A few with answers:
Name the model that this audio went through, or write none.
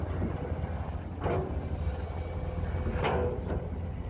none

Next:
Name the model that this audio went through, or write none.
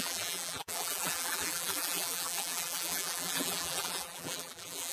vocoder, BigVGAN v2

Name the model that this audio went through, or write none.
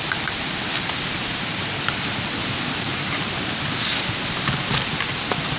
vocoder, BigVGAN v2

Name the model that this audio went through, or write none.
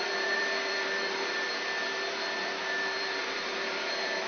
vocoder, BigVGAN v2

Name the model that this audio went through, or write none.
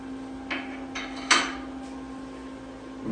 none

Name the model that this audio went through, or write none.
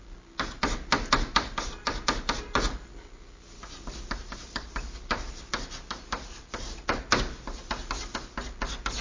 none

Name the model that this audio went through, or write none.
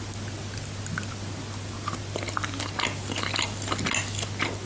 none